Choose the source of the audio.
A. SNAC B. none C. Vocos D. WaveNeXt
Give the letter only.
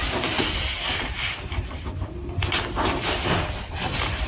B